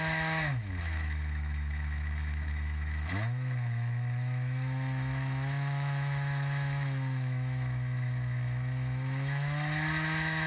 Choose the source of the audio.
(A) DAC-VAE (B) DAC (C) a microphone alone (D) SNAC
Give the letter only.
A